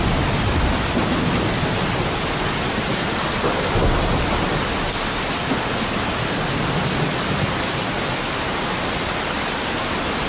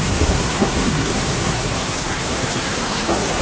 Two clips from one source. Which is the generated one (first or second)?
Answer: second